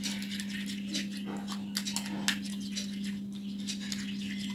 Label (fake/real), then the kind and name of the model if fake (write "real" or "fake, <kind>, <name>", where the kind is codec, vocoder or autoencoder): real